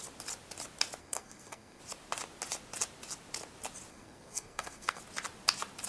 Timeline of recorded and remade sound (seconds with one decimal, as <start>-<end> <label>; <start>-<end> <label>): 0.0-1.0 recorded; 1.0-1.8 remade; 1.8-3.9 recorded; 3.9-5.0 remade; 5.0-5.9 recorded